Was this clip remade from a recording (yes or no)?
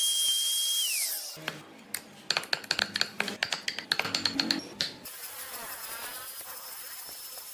no